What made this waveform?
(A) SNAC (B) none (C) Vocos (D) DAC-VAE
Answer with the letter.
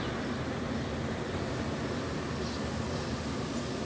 B